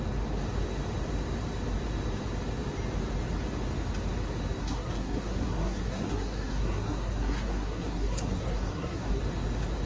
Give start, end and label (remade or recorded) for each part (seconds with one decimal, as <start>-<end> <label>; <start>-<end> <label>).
0.0-4.6 recorded; 4.6-9.2 remade; 9.2-9.9 recorded